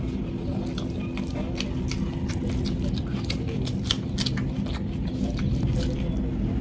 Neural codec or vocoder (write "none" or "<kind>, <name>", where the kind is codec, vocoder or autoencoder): none